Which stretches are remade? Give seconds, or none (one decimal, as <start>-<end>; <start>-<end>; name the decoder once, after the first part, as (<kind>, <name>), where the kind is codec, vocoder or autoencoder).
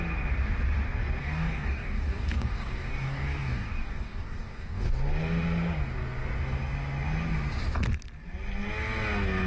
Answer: 1.2-4.9 (codec, DAC)